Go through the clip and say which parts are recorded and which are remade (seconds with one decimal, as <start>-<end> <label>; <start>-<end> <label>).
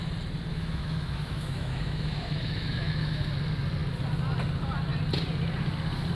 0.0-0.5 recorded; 0.5-3.3 remade; 3.3-6.1 recorded